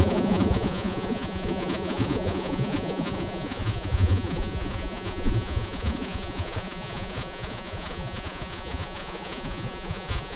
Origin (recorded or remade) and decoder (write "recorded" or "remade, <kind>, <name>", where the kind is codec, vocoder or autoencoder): remade, vocoder, Vocos